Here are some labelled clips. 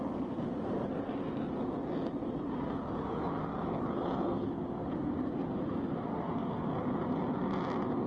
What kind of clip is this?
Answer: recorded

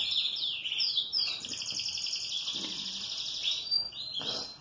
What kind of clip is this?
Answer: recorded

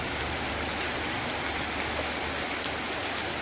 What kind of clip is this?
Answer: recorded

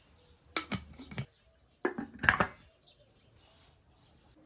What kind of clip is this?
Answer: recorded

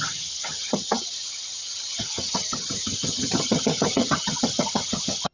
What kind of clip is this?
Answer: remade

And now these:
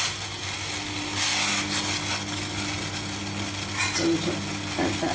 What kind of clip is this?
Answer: recorded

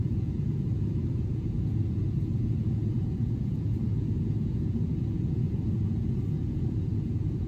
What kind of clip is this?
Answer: remade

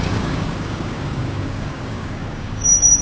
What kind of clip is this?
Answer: remade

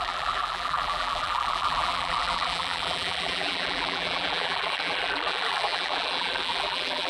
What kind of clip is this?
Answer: remade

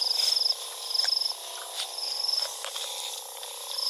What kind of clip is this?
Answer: recorded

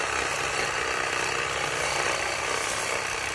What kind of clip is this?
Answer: recorded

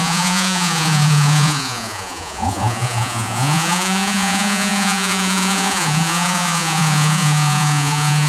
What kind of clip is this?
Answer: remade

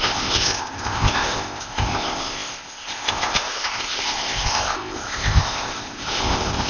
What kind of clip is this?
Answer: remade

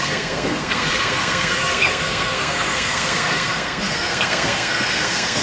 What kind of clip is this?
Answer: remade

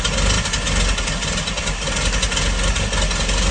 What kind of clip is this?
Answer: recorded